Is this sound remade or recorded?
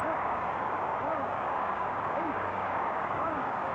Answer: remade